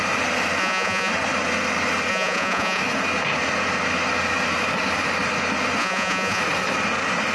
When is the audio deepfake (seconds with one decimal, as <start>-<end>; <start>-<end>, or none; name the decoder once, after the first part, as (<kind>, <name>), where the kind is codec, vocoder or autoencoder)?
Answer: 0.6-1.1 (vocoder, Vocos); 2.1-2.8; 5.8-6.4